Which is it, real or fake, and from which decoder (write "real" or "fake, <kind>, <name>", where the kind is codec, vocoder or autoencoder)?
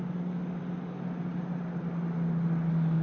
real